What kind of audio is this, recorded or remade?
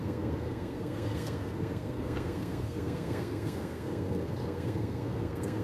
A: remade